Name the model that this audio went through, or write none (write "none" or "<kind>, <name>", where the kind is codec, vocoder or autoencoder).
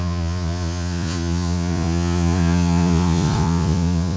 vocoder, Vocos